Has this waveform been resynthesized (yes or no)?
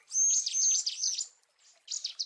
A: no